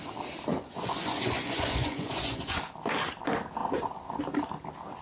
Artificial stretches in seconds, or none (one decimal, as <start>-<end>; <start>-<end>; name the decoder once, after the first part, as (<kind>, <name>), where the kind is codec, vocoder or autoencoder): 0.5-2.6 (vocoder, Vocos); 3.6-4.2